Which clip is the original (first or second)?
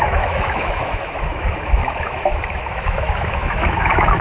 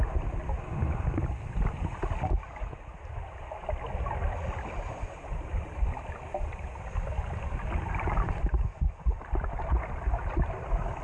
second